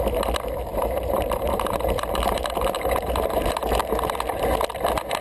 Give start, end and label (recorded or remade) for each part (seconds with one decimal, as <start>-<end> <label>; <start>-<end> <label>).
0.0-0.7 recorded; 0.7-3.8 remade; 3.8-5.2 recorded